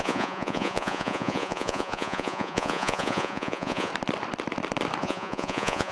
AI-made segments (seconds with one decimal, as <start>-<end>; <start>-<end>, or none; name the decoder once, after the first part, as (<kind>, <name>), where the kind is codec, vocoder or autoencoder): 0.0-3.9 (vocoder, Vocos); 5.0-5.9